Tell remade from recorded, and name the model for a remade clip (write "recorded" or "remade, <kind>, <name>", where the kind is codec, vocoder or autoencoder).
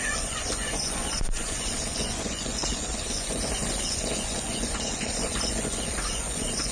remade, vocoder, Vocos